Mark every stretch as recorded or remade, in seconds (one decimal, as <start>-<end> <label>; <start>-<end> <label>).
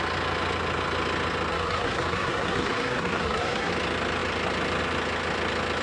0.0-1.5 recorded; 1.5-3.7 remade; 3.7-5.8 recorded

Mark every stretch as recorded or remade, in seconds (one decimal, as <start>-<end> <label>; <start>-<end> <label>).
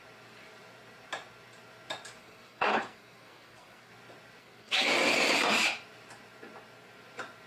0.0-2.2 recorded; 2.2-3.9 remade; 3.9-4.4 recorded; 4.4-4.9 remade; 4.9-7.5 recorded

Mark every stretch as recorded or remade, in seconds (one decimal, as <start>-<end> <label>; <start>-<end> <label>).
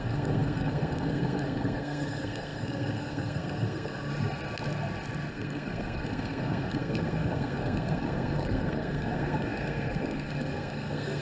0.0-4.1 remade; 4.1-5.3 recorded; 5.3-11.2 remade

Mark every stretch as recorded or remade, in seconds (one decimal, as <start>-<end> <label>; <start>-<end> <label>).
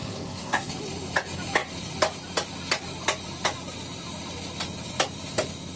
0.0-0.7 remade; 0.7-5.8 recorded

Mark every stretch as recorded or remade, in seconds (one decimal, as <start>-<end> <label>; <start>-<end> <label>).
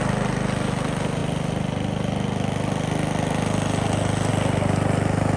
0.0-5.4 recorded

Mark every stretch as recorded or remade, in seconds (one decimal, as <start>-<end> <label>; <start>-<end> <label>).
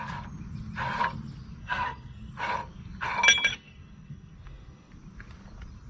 0.0-1.6 recorded; 1.6-2.3 remade; 2.3-3.5 recorded; 3.5-4.9 remade; 4.9-5.9 recorded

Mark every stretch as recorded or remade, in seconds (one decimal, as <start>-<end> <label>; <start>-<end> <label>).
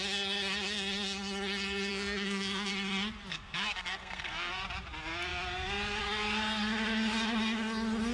0.0-1.9 recorded; 1.9-2.7 remade; 2.7-3.3 recorded; 3.3-4.5 remade; 4.5-8.1 recorded